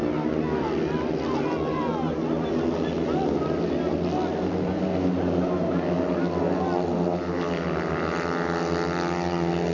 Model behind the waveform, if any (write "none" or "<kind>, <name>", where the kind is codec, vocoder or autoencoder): none